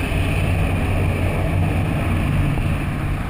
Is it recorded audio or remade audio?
recorded